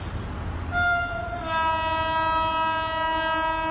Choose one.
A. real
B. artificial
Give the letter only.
A